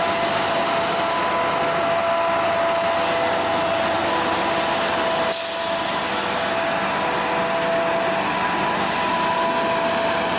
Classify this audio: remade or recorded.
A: recorded